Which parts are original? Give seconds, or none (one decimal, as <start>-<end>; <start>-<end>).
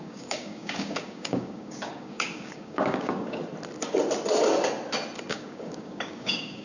3.4-5.3